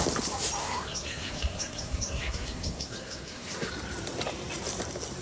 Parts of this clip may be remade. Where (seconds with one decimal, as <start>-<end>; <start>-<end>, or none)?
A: 0.6-3.7